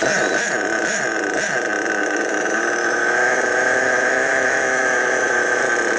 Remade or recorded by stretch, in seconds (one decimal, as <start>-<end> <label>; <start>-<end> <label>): 0.0-2.0 recorded; 2.0-5.6 remade; 5.6-6.0 recorded